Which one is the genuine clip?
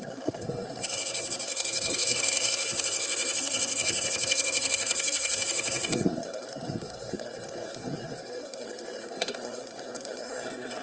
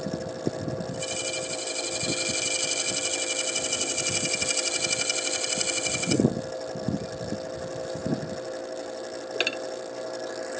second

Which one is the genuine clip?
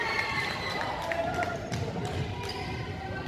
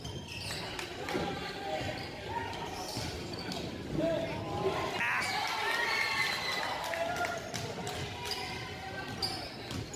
second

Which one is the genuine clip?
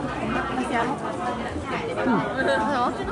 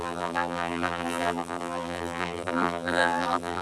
first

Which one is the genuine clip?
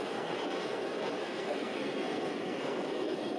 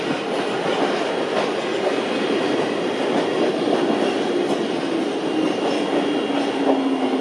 second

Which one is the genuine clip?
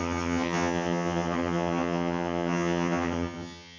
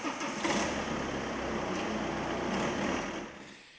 second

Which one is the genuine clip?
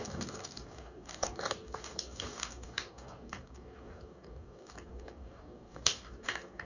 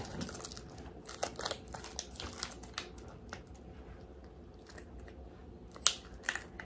second